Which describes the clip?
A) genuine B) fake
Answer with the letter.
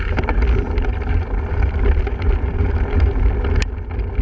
A